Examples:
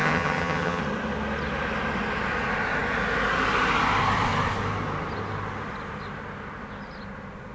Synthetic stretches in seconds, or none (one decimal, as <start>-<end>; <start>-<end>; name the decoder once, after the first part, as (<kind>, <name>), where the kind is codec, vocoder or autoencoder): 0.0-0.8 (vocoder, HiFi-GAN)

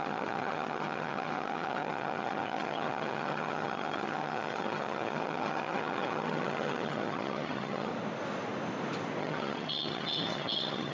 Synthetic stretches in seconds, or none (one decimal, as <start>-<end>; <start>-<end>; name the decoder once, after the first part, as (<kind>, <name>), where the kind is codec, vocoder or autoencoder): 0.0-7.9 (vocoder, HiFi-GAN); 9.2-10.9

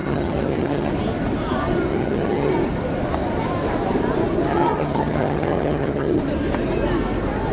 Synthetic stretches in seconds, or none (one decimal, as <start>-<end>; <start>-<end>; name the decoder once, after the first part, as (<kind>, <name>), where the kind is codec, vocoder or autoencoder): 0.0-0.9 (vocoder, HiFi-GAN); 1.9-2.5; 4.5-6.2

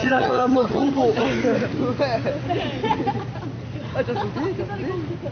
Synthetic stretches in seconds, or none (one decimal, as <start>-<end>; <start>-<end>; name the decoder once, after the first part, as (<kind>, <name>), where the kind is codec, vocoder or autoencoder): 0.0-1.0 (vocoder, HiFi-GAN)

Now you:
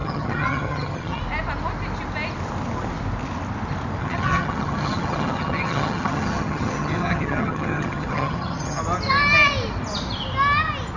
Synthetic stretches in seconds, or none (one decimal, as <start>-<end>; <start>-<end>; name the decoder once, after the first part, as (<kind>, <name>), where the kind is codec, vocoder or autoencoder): 0.0-1.2 (vocoder, HiFi-GAN); 4.0-8.8

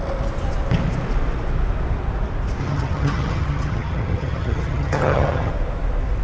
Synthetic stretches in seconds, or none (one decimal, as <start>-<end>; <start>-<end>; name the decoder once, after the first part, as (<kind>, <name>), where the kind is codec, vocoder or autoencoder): 2.6-5.5 (vocoder, HiFi-GAN)

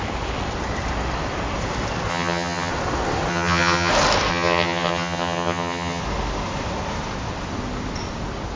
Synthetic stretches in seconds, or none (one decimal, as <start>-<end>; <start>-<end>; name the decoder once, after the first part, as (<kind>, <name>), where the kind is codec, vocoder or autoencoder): 2.1-2.7 (vocoder, HiFi-GAN); 3.3-3.9; 4.3-6.0